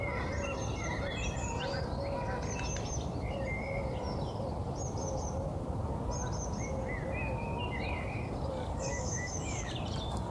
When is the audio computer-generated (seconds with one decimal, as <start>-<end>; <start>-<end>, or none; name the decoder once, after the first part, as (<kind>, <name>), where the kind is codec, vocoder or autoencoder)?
8.9-9.7 (autoencoder, DAC-VAE)